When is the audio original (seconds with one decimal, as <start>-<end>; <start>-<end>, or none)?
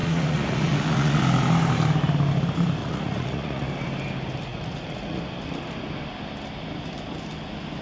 1.2-2.8; 3.7-4.5; 5.2-7.8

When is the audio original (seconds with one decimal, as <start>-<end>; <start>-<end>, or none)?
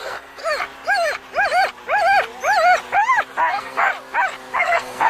0.4-3.5; 3.9-4.6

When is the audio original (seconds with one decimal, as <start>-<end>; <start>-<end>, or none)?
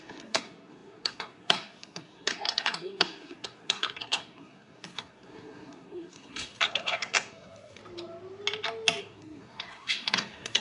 7.8-9.0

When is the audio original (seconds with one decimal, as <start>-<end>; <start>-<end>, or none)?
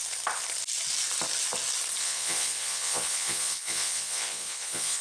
0.0-2.0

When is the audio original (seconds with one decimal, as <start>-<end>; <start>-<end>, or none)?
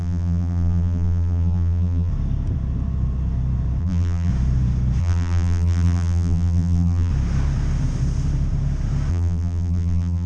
2.1-3.8; 4.3-5.0; 7.1-9.1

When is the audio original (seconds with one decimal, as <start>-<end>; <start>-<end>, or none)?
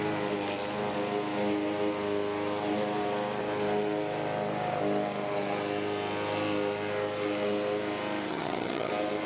0.0-8.3; 8.9-9.3